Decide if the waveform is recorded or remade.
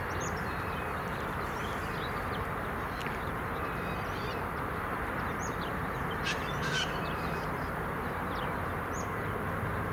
remade